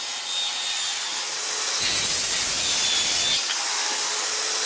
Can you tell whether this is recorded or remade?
recorded